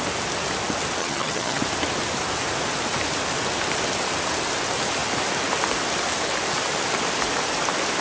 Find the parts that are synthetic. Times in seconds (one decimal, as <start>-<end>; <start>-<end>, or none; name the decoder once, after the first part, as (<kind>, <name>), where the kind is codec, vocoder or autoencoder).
1.0-1.6 (vocoder, HiFi-GAN)